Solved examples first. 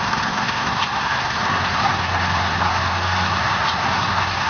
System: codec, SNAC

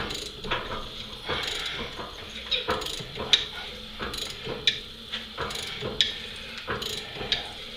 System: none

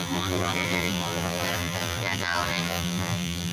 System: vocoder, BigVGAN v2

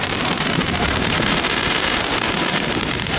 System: vocoder, BigVGAN v2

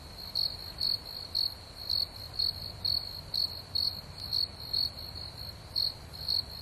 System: none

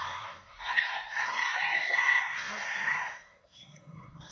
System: codec, SNAC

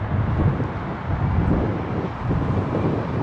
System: none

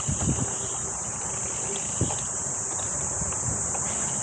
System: none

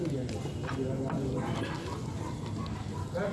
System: none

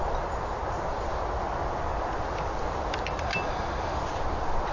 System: none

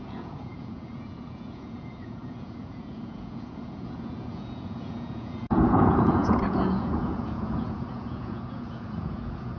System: vocoder, Vocos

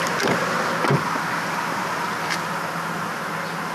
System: none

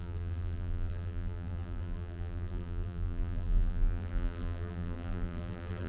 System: vocoder, BigVGAN v2